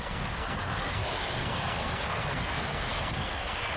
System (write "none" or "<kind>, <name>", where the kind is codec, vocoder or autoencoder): codec, SNAC